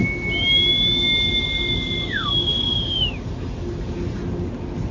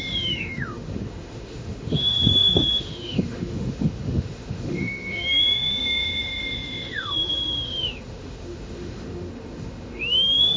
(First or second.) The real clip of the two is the first